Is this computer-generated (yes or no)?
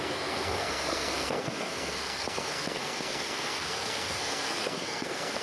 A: yes